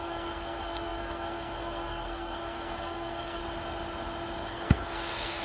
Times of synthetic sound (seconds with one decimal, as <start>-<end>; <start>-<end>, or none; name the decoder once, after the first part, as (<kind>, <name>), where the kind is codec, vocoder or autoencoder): 0.0-3.4 (codec, SNAC); 4.5-5.4